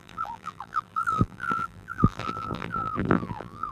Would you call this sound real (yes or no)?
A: no